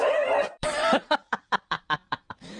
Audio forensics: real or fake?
fake